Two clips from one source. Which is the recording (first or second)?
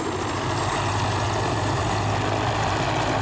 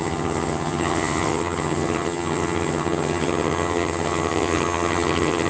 first